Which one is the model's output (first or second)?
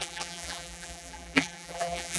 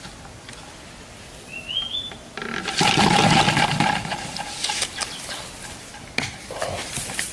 first